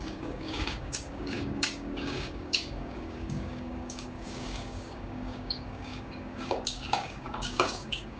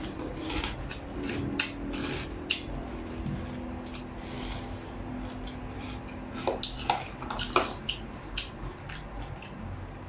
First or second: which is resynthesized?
first